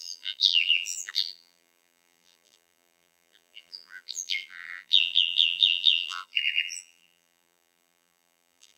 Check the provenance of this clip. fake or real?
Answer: fake